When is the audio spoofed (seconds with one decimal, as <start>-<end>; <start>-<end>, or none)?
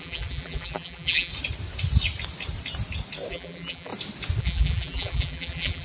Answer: 0.0-1.3; 3.3-3.9; 4.4-5.8